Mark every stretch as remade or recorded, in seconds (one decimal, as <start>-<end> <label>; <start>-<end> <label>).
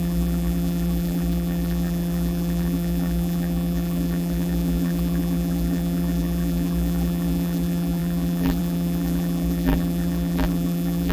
0.0-11.1 remade